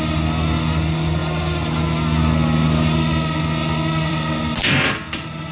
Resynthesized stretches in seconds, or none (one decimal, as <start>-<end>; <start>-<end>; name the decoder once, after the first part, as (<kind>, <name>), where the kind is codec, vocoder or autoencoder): none